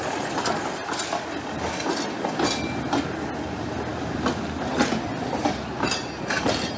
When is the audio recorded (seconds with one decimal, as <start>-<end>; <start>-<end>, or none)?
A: 0.0-6.8